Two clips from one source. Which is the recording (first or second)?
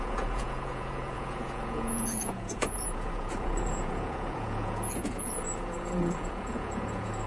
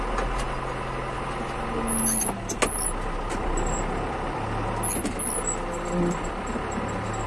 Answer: second